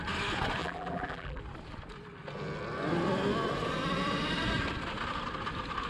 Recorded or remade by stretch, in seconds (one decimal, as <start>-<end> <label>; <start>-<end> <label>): 0.0-0.6 recorded; 0.6-1.4 remade; 1.4-5.9 recorded